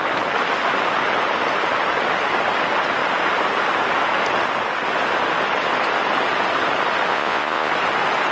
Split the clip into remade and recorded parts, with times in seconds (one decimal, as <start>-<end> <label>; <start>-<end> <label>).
0.0-7.1 recorded; 7.1-7.7 remade; 7.7-8.3 recorded

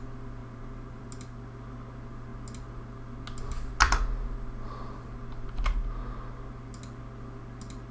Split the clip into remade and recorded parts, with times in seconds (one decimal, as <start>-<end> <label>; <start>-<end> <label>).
0.0-0.4 recorded; 0.4-1.0 remade; 1.0-7.9 recorded

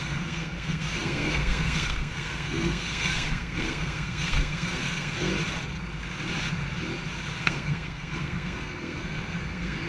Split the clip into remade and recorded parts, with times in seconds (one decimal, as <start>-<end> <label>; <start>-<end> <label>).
0.0-5.3 remade; 5.3-7.4 recorded; 7.4-9.9 remade

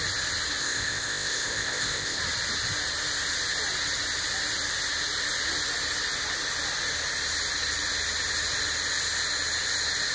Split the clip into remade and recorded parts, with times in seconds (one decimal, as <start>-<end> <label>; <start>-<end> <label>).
0.0-0.6 recorded; 0.6-2.2 remade; 2.2-10.1 recorded

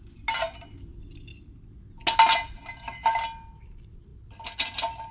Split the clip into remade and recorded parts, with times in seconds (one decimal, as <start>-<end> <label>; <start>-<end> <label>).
0.0-5.1 recorded

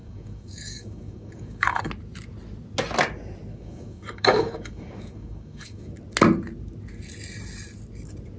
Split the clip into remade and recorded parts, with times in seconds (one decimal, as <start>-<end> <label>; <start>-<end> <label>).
0.0-1.9 remade; 1.9-3.5 recorded; 3.5-5.9 remade; 5.9-8.4 recorded

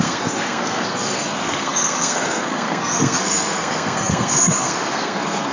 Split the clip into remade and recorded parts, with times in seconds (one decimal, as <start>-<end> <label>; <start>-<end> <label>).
0.0-5.5 remade

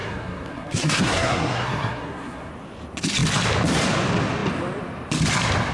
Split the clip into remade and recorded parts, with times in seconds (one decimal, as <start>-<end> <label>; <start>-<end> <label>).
0.0-2.5 remade; 2.5-5.7 recorded